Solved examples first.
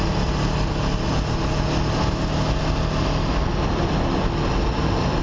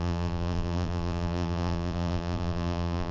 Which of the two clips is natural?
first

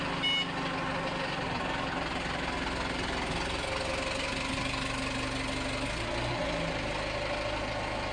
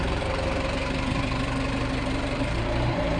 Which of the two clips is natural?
first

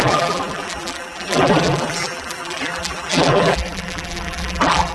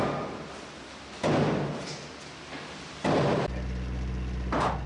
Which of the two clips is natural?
second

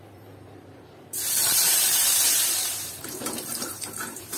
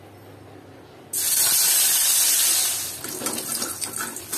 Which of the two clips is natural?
second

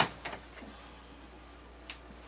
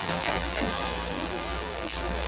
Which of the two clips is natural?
first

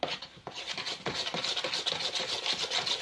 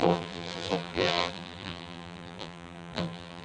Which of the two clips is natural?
first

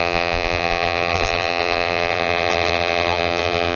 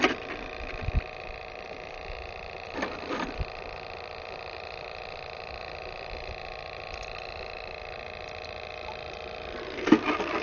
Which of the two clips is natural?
second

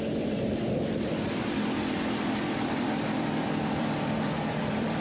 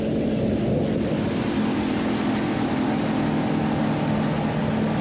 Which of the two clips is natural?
second